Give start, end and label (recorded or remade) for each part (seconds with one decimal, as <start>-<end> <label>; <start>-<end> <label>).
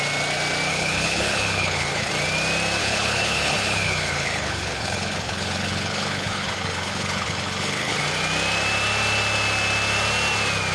0.0-0.7 recorded; 0.7-2.1 remade; 2.1-2.8 recorded; 2.8-8.0 remade; 8.0-10.7 recorded